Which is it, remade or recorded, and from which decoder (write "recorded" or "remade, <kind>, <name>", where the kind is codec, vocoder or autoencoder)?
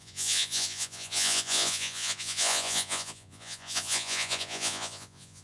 remade, vocoder, Vocos